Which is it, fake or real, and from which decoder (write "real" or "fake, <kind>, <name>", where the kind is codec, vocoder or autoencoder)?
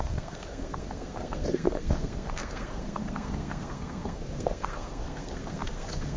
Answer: fake, codec, SNAC